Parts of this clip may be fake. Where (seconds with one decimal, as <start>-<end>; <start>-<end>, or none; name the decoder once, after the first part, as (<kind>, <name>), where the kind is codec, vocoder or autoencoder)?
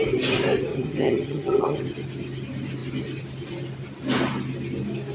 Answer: 0.7-1.8 (vocoder, HiFi-GAN)